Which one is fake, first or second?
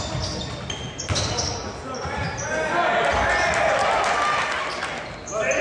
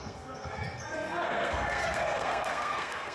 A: second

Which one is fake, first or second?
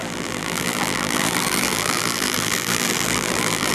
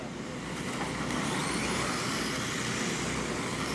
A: first